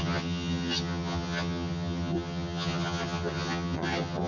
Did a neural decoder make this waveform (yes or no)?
yes